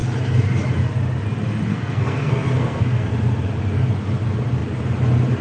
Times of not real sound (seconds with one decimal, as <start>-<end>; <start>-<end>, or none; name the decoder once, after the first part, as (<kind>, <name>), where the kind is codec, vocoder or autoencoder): 1.7-3.1 (codec, SNAC)